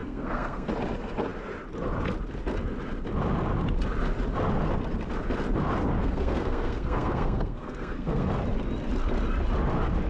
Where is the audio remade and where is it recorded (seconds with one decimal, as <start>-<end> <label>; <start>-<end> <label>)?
0.0-0.7 remade; 0.7-6.0 recorded; 6.0-8.3 remade; 8.3-10.1 recorded